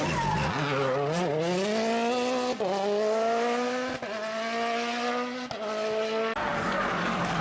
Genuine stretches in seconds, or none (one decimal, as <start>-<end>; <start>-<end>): 0.0-6.5